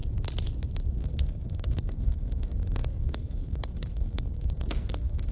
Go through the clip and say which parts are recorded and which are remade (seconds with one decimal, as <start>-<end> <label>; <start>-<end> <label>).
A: 0.0-0.9 recorded; 0.9-5.3 remade